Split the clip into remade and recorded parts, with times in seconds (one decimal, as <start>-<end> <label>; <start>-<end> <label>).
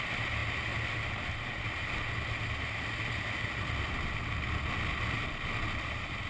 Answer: 0.0-6.3 recorded